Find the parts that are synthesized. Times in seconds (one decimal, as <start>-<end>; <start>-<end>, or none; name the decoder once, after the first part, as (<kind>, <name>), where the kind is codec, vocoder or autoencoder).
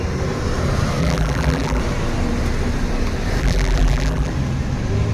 1.0-1.8 (vocoder, BigVGAN v2); 3.4-4.3